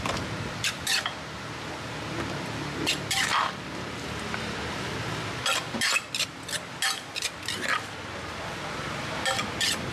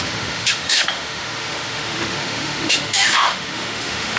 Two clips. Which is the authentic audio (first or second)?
first